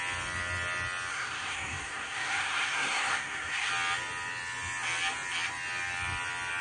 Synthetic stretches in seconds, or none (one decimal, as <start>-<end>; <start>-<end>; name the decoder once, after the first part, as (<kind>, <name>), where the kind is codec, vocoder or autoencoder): 1.1-3.7 (codec, SNAC)